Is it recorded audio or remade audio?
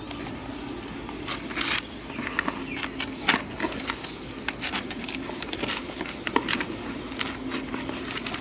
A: recorded